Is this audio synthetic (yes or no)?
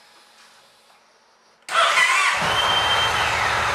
no